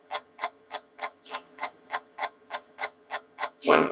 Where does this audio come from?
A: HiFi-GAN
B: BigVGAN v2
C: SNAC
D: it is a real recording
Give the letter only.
A